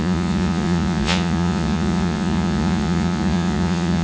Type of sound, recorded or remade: remade